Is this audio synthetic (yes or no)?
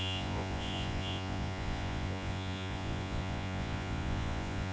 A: yes